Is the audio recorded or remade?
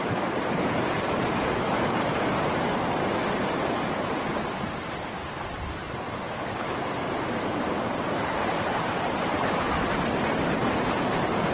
remade